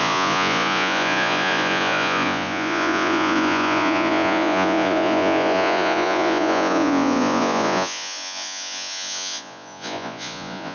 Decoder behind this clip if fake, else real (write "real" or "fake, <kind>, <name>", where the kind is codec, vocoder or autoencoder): fake, vocoder, Vocos